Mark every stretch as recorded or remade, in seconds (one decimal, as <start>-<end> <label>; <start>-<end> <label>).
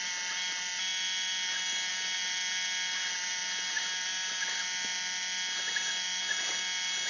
0.0-7.1 recorded